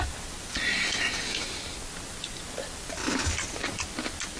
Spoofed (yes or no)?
no